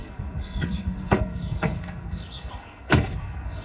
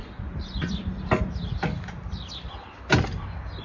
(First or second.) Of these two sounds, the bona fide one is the second